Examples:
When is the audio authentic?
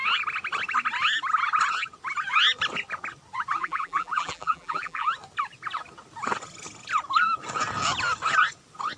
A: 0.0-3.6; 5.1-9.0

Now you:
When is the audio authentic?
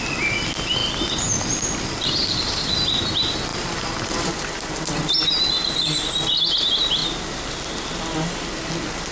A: 0.0-0.8; 1.4-2.2; 2.7-3.5; 4.3-9.1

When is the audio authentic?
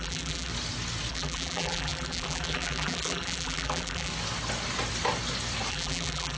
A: 0.5-1.1; 4.1-5.7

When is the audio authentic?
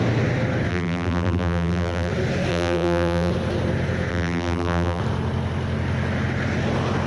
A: 0.0-0.7; 2.1-2.5; 3.3-4.1; 5.0-7.1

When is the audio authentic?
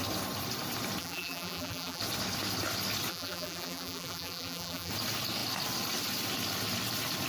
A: 0.0-1.0; 2.0-3.1; 4.9-7.3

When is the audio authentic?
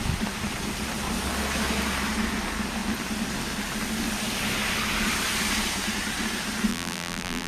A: 0.0-6.7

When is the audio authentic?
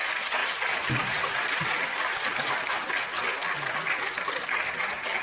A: 0.0-0.4; 2.7-5.2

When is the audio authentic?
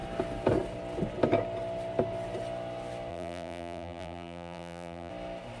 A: 0.0-3.1; 5.1-5.6